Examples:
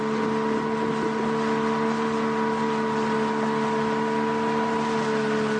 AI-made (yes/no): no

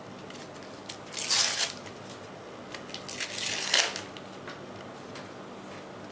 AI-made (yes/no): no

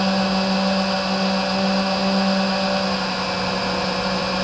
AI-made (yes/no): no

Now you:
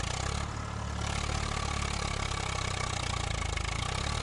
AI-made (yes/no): no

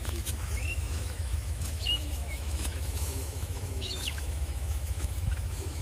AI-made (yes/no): yes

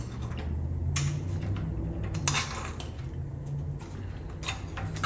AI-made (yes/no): no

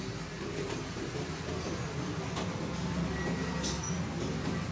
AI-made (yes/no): no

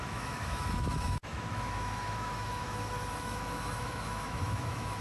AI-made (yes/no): yes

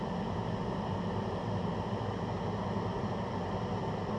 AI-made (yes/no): no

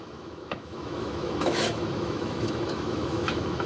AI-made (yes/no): yes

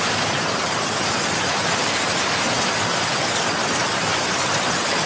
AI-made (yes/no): no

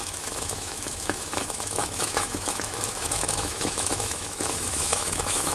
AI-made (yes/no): yes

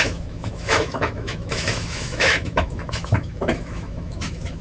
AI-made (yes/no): yes